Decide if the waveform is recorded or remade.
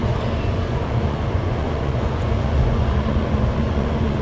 remade